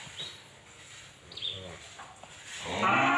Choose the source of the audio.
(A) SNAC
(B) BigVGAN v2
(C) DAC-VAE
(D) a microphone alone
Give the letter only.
D